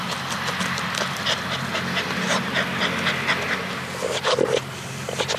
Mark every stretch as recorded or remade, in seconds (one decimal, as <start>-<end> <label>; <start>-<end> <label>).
0.0-5.4 recorded